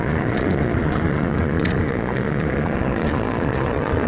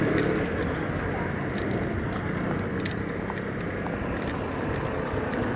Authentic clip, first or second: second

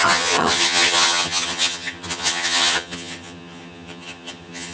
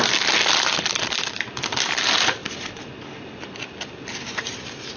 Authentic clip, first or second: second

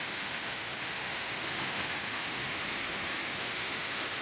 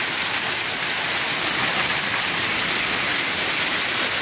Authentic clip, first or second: second